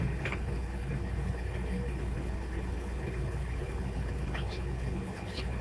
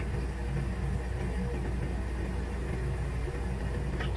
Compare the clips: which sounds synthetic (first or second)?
first